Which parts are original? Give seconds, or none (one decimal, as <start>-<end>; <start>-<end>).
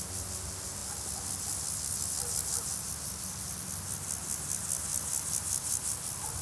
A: 0.0-6.4